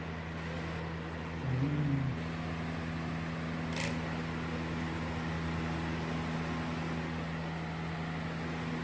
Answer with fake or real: real